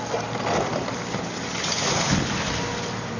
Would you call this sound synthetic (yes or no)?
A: no